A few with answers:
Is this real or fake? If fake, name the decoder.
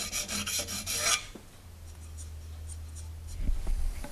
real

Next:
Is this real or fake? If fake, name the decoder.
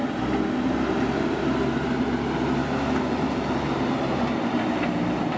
real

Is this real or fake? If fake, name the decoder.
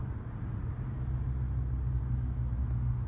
real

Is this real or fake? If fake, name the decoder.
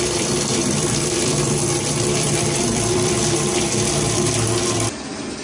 fake, vocoder, BigVGAN v2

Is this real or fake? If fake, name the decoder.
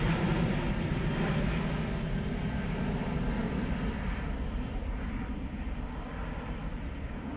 real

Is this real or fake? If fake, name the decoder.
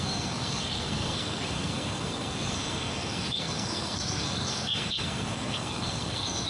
fake, codec, SNAC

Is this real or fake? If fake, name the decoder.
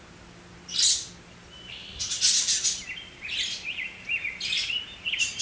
real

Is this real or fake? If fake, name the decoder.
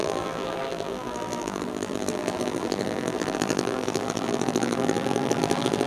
fake, vocoder, BigVGAN v2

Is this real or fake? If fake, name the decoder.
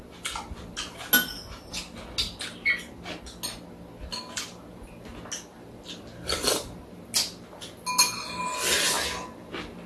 real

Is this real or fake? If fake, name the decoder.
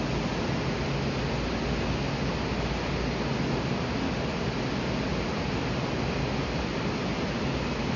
real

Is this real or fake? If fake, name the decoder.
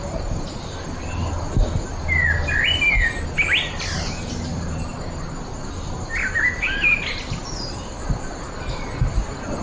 real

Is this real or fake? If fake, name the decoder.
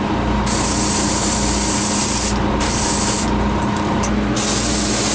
real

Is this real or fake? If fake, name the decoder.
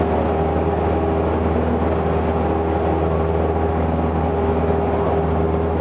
real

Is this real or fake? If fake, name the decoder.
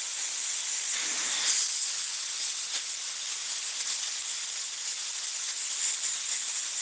real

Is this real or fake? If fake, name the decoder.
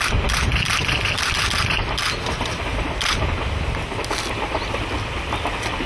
real